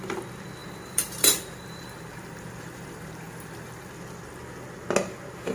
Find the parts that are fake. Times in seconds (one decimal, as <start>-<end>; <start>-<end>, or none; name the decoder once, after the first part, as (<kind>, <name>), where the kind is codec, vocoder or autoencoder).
0.6-3.9 (vocoder, BigVGAN v2)